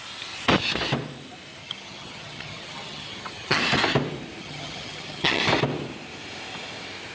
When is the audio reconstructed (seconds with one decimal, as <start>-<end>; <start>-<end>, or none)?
1.6-3.6; 4.4-5.4